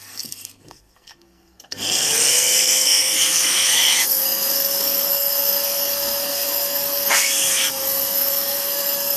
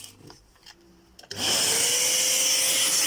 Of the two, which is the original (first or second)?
second